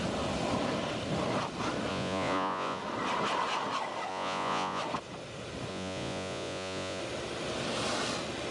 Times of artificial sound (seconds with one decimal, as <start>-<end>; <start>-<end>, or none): 1.9-2.8; 4.1-4.8; 5.7-7.0